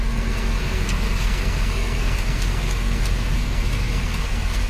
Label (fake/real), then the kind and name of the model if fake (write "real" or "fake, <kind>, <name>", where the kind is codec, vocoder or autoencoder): fake, codec, SNAC